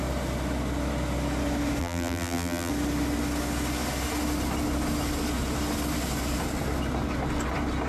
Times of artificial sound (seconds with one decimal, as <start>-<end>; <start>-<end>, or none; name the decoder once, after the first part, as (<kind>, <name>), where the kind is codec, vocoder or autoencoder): 1.8-2.7 (vocoder, BigVGAN v2)